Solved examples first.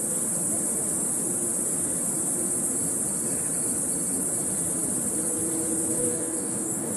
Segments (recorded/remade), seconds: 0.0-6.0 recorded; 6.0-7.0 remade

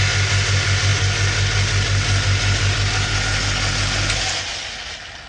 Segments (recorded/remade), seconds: 0.0-5.3 recorded

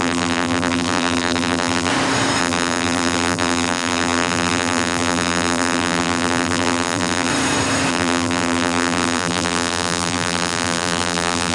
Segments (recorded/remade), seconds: 0.0-1.9 remade; 1.9-2.4 recorded; 2.4-7.3 remade; 7.3-7.9 recorded; 7.9-11.5 remade

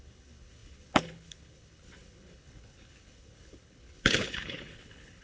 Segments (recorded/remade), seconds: 0.0-5.2 remade

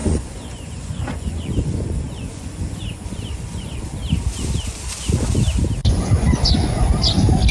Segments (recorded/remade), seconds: 0.0-3.8 remade; 3.8-5.8 recorded; 5.8-6.9 remade; 6.9-7.5 recorded